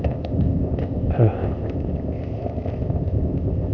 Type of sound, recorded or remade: remade